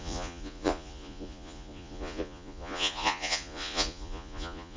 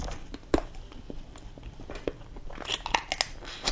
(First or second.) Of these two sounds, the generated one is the first